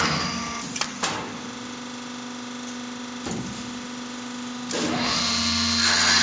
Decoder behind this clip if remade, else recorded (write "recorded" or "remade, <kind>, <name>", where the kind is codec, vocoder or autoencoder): recorded